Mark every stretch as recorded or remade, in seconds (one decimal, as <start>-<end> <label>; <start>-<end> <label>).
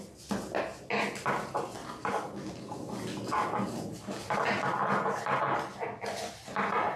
0.0-1.8 recorded; 1.8-4.4 remade; 4.4-7.0 recorded